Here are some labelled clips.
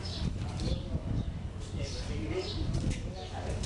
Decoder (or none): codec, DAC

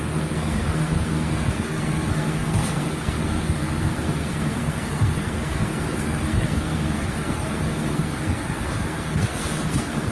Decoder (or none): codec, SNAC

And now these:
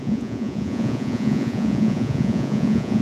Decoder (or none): vocoder, Vocos